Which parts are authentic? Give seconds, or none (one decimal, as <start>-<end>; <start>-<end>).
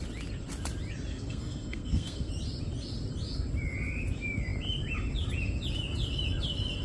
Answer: 0.0-1.1; 2.3-6.8